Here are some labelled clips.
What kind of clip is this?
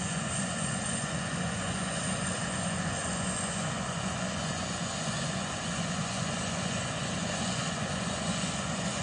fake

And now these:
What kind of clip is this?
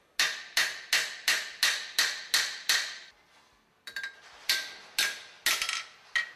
real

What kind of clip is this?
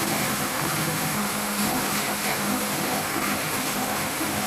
fake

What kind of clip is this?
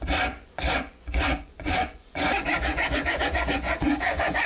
fake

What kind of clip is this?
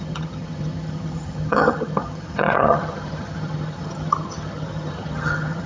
fake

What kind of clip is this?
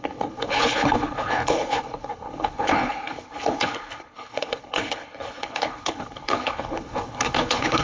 fake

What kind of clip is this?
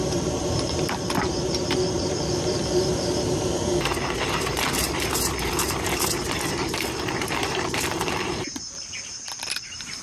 fake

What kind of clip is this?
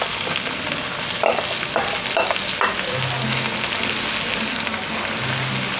real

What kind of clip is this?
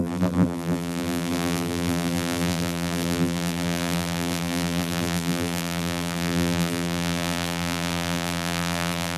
fake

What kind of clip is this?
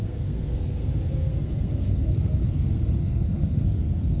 fake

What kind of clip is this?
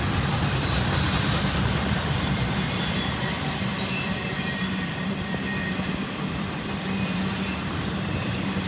fake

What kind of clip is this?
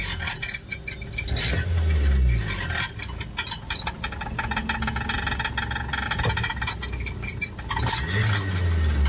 real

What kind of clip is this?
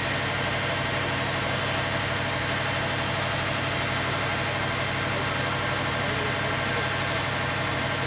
real